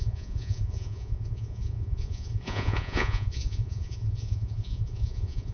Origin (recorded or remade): remade